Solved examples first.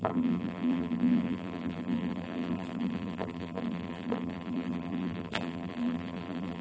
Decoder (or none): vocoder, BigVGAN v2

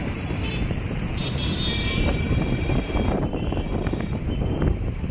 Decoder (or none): vocoder, BigVGAN v2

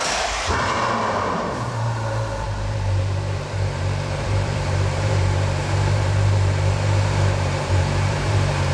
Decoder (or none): vocoder, BigVGAN v2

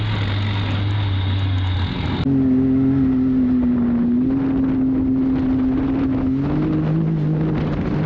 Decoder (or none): none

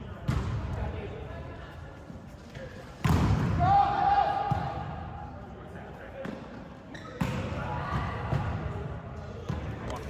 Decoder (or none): vocoder, BigVGAN v2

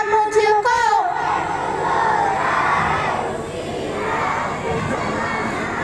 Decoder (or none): vocoder, BigVGAN v2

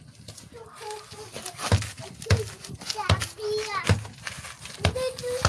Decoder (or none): none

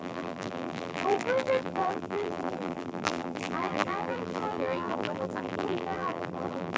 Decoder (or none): vocoder, BigVGAN v2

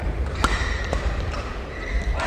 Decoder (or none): vocoder, BigVGAN v2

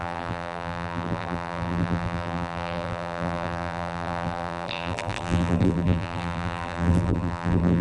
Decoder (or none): vocoder, BigVGAN v2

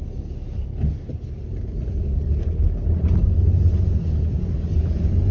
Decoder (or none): none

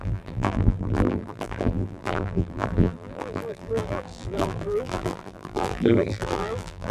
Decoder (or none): vocoder, BigVGAN v2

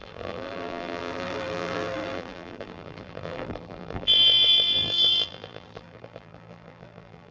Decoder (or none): vocoder, BigVGAN v2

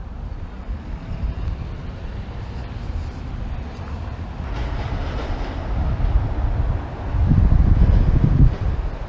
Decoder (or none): none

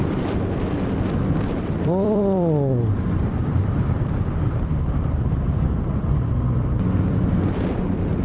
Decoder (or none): vocoder, BigVGAN v2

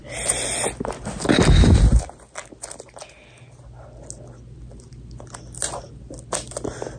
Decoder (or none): none